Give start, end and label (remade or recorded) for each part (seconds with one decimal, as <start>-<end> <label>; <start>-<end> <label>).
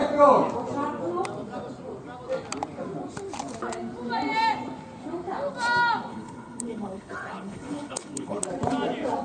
0.0-6.1 recorded; 6.1-8.4 remade; 8.4-9.2 recorded